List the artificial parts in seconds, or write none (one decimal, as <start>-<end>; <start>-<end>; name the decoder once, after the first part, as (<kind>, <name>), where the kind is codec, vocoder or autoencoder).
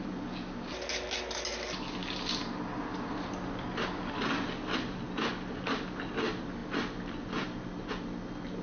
none